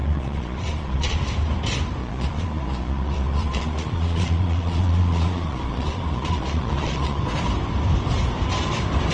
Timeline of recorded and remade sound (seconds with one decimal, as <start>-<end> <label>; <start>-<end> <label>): 0.0-1.2 remade; 1.2-2.0 recorded; 2.0-7.2 remade; 7.2-9.1 recorded

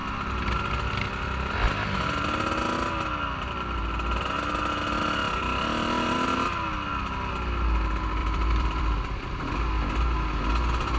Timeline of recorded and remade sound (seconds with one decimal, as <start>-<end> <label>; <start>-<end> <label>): 0.0-8.2 recorded; 8.2-9.4 remade; 9.4-11.0 recorded

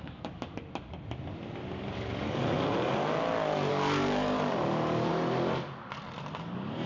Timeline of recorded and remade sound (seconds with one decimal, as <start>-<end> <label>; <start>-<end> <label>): 0.0-0.5 remade; 0.5-3.7 recorded; 3.7-5.1 remade; 5.1-6.4 recorded; 6.4-6.9 remade

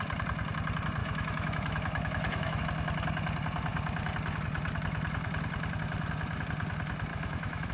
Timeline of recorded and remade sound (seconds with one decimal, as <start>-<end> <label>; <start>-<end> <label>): 0.0-1.0 recorded; 1.0-2.6 remade; 2.6-7.1 recorded; 7.1-7.7 remade